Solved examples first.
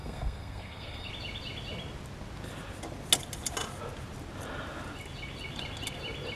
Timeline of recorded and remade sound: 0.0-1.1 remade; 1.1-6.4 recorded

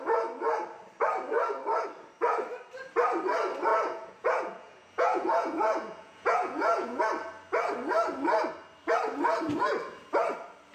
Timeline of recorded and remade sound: 0.0-3.7 recorded; 3.7-7.0 remade; 7.0-10.7 recorded

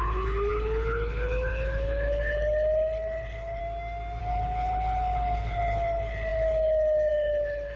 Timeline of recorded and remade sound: 0.0-3.6 remade; 3.6-4.2 recorded; 4.2-7.8 remade

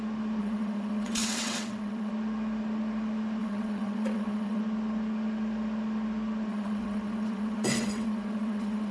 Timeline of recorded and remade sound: 0.0-0.4 recorded; 0.4-2.1 remade; 2.1-3.4 recorded; 3.4-4.6 remade; 4.6-6.5 recorded; 6.5-8.9 remade

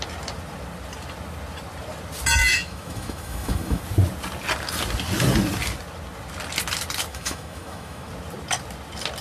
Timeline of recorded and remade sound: 0.0-2.4 recorded; 2.4-3.8 remade; 3.8-7.1 recorded; 7.1-8.1 remade; 8.1-9.2 recorded